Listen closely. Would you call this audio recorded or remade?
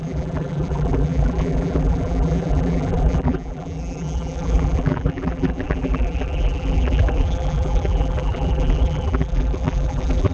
remade